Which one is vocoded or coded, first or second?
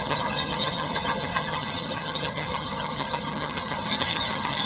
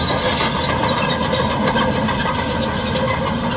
first